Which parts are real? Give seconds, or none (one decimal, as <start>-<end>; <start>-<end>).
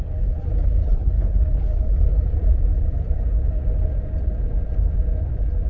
0.0-0.8; 2.1-5.7